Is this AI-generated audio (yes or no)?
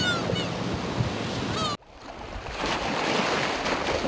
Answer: no